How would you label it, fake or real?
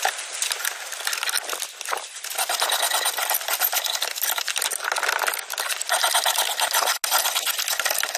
real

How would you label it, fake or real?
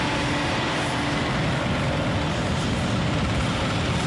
real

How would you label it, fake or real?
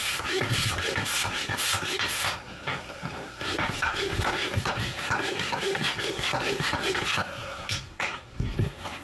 fake